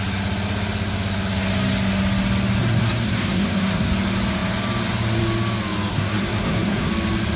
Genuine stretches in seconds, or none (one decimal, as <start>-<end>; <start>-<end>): 0.0-2.6; 3.9-5.9; 6.9-7.4